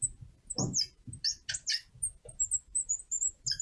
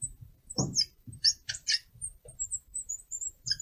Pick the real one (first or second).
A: first